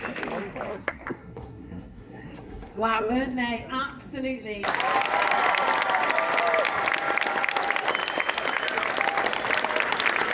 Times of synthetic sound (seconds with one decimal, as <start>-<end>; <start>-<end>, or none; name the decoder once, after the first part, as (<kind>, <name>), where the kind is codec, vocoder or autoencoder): 0.7-3.1 (codec, SNAC)